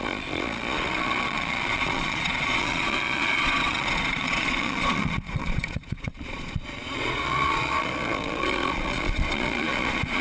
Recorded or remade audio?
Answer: remade